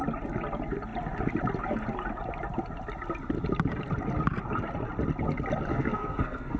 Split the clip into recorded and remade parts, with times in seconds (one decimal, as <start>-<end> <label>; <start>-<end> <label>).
0.0-5.7 recorded; 5.7-6.6 remade